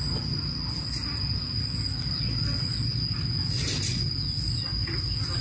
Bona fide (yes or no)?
yes